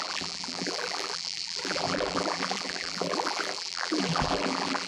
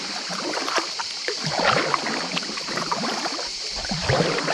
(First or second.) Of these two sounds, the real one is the second